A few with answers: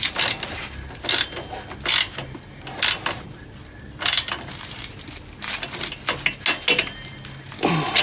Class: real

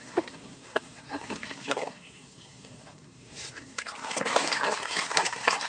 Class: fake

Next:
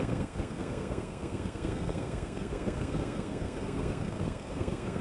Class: fake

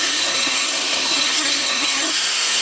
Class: fake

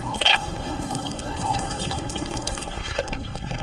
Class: fake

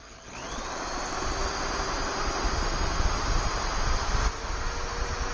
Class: real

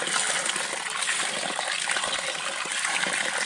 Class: real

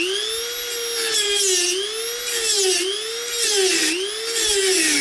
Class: real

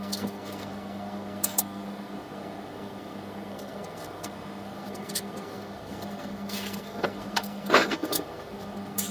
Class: fake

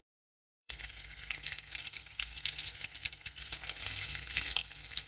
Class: fake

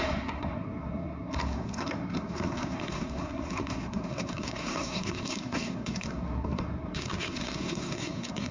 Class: fake